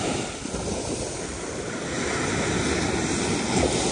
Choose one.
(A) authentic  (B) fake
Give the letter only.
A